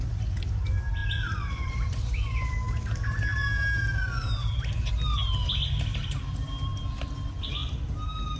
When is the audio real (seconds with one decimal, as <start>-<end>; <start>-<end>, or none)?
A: 0.0-1.0; 2.5-5.6; 7.1-8.4